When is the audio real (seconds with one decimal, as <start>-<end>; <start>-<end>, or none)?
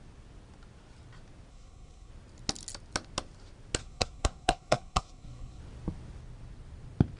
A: 0.0-1.5; 2.1-3.8; 5.6-7.2